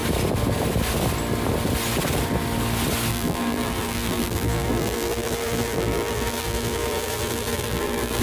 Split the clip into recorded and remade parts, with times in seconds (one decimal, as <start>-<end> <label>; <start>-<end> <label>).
0.0-3.1 recorded; 3.1-8.2 remade